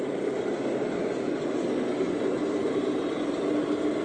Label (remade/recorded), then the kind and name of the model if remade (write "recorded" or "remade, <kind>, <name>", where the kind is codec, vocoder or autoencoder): recorded